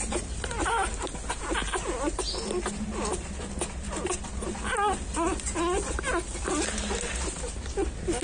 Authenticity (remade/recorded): recorded